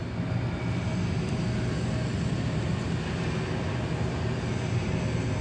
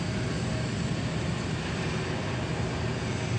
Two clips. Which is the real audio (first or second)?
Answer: first